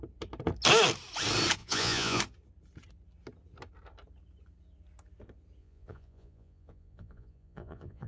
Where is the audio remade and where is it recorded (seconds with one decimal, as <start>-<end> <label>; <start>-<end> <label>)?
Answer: 0.0-1.6 recorded; 1.6-2.2 remade; 2.2-5.6 recorded; 5.6-8.1 remade